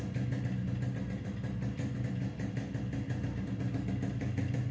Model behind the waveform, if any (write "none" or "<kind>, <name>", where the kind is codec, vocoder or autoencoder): none